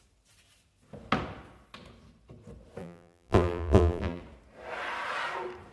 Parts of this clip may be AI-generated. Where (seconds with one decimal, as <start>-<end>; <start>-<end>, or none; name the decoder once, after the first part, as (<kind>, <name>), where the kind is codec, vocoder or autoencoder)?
2.8-4.2 (vocoder, BigVGAN v2)